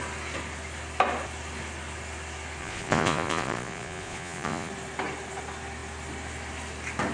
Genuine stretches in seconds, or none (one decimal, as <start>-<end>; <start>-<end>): 0.0-2.6; 4.7-7.1